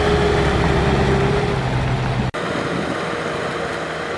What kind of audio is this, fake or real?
real